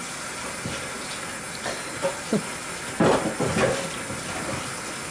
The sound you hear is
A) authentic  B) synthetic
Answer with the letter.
A